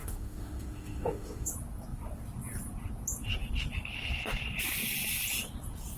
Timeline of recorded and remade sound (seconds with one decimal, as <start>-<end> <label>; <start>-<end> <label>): 0.0-1.5 remade; 1.5-6.0 recorded